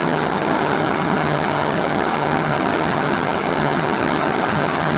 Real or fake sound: fake